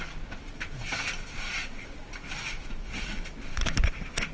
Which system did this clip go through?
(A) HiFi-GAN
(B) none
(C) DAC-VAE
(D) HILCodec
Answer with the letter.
B